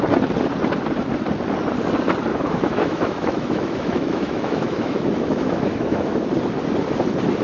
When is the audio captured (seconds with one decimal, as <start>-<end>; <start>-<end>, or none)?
0.0-2.3; 6.3-7.4